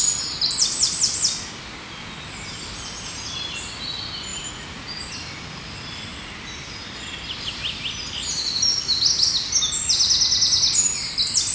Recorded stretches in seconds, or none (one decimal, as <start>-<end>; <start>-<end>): 0.0-4.3; 5.1-11.5